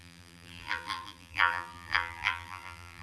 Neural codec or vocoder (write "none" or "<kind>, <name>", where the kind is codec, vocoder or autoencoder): vocoder, BigVGAN v2